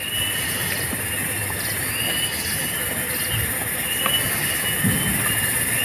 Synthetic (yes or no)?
no